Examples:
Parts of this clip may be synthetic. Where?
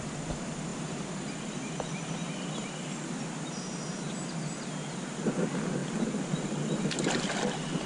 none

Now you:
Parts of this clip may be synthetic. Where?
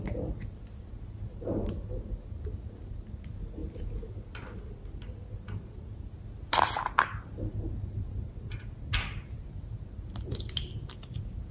none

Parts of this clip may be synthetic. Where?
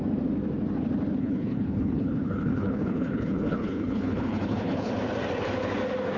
1.2-4.9 (codec, HILCodec)